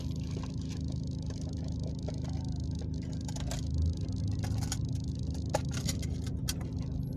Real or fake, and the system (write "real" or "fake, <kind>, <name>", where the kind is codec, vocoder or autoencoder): real